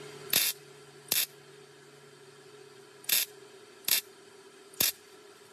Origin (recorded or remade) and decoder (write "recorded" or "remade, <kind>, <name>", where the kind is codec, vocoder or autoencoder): recorded